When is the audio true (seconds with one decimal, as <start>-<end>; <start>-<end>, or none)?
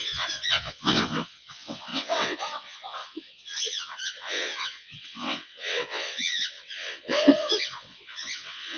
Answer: none